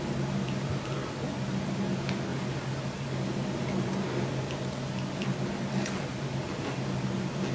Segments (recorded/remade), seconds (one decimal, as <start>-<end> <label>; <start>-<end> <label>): 0.0-7.5 recorded

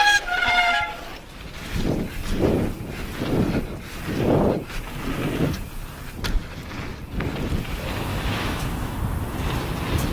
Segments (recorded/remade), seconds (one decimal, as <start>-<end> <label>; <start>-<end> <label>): 0.0-8.1 recorded; 8.1-9.0 remade; 9.0-10.1 recorded